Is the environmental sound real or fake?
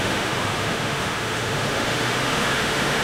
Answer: fake